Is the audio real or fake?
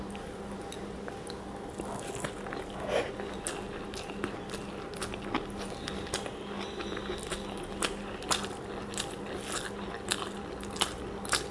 real